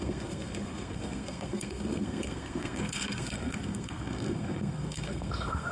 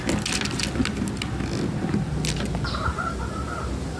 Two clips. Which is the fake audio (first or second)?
first